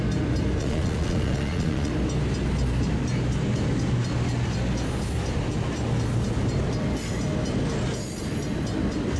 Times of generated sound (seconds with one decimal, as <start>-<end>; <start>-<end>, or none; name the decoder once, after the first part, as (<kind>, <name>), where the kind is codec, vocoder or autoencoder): 0.6-1.9 (vocoder, Vocos)